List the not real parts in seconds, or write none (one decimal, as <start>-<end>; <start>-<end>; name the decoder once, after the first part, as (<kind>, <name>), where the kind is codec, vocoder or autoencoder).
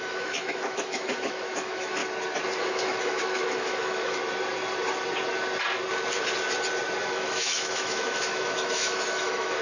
0.0-2.0 (autoencoder, DAC-VAE); 2.6-4.2; 7.0-9.6